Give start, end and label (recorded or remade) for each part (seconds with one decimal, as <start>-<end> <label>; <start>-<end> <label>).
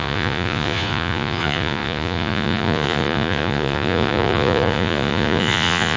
0.0-6.0 remade